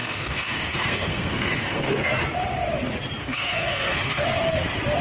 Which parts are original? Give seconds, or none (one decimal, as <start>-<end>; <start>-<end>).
2.1-3.2; 4.2-5.0

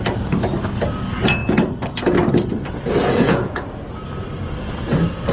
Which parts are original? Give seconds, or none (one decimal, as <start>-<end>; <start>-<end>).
0.0-3.0; 3.5-5.3

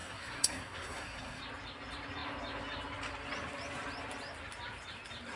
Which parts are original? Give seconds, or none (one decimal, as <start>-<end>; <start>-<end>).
1.4-5.4

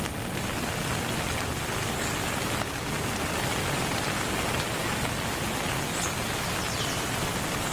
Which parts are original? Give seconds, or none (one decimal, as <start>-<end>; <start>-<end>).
0.0-7.7

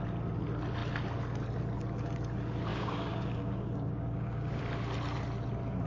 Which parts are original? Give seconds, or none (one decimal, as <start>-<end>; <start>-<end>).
0.0-2.7; 4.6-5.9

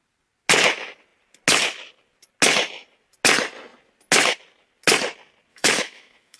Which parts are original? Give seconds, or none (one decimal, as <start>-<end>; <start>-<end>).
0.0-5.5